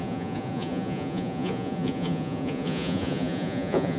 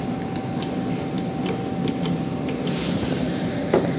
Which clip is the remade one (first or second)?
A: first